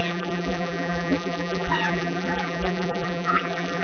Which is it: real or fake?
fake